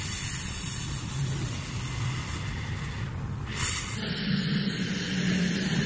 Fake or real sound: real